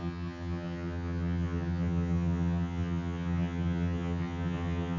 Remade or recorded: remade